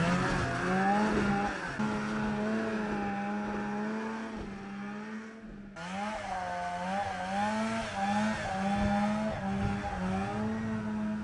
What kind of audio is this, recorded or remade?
recorded